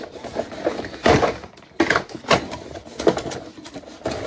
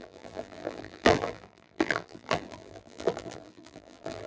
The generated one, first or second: second